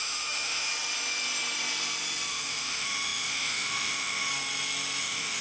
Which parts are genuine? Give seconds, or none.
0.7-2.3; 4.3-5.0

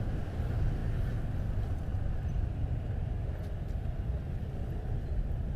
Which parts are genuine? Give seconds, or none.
0.0-5.6

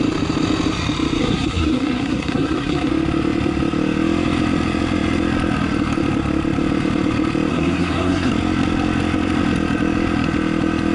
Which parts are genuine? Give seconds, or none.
0.0-1.2; 2.9-7.5; 8.3-10.9

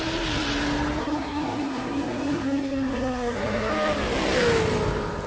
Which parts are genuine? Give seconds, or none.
0.0-1.0; 3.7-5.3

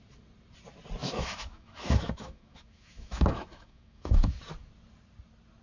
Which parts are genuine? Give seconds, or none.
0.0-1.0; 4.4-5.6